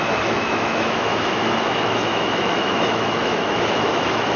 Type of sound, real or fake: fake